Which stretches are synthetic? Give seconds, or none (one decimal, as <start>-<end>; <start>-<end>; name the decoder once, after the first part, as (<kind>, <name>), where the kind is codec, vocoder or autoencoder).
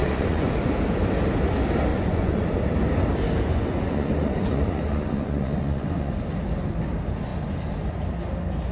0.0-0.7 (vocoder, Vocos); 1.9-2.6; 3.5-6.1